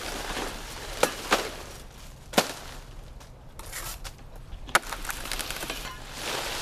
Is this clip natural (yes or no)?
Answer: yes